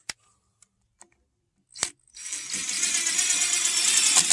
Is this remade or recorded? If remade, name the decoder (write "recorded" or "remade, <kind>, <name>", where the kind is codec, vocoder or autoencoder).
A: recorded